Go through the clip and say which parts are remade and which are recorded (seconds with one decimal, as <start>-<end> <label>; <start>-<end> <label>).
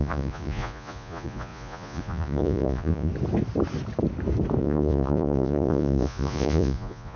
0.0-3.1 remade; 3.1-4.6 recorded; 4.6-7.2 remade